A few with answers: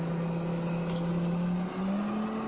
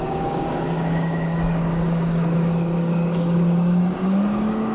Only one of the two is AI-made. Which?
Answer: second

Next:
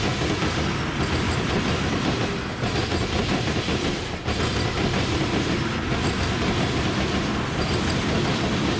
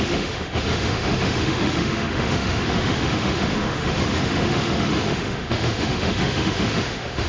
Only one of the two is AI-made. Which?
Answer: second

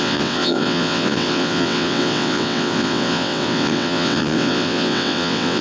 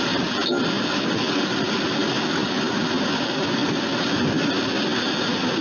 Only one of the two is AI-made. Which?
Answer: first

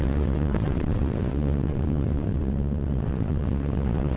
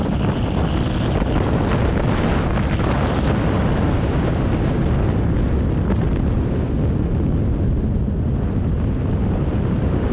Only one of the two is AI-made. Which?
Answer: first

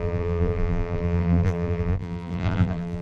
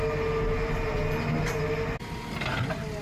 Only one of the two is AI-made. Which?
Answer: first